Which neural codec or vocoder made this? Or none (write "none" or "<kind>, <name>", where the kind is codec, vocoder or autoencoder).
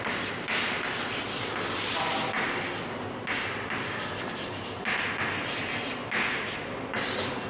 none